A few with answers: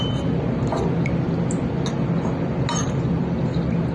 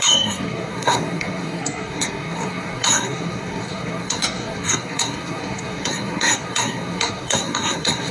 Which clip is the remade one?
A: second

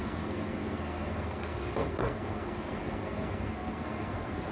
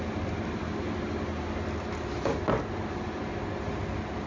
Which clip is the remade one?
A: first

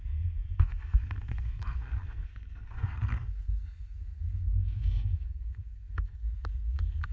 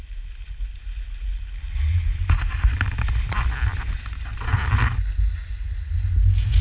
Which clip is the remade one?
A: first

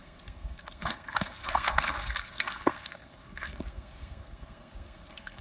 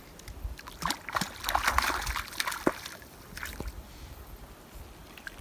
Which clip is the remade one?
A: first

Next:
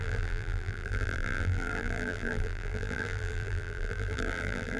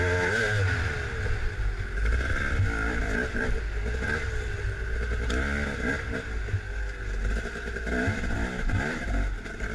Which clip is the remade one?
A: first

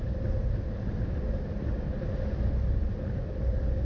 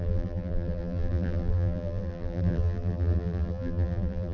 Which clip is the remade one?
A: second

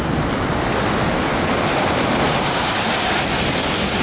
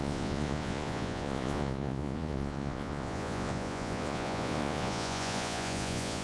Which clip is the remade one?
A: second